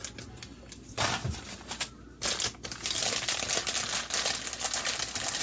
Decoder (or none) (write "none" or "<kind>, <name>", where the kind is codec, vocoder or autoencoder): none